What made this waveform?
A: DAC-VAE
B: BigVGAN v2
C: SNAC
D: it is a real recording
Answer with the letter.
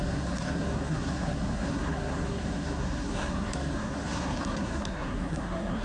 C